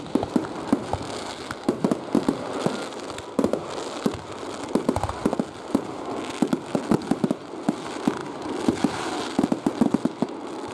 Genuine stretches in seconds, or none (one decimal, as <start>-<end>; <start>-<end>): 0.0-10.7